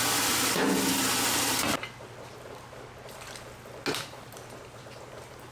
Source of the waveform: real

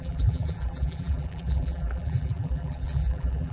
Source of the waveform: fake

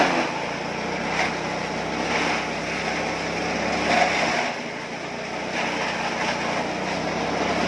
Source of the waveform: real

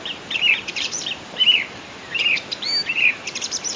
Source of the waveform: fake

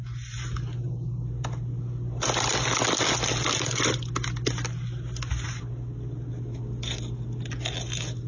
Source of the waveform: real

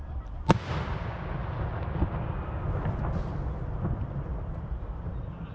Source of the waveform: real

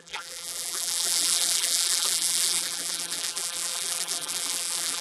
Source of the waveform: fake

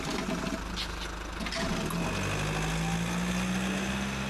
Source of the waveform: real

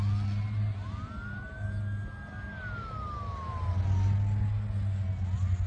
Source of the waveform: real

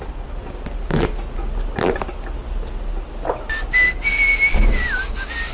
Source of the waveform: real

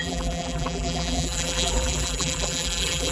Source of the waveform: fake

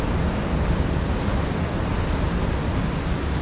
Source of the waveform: real